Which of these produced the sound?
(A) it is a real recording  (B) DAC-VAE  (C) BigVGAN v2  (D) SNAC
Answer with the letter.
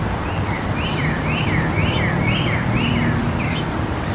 C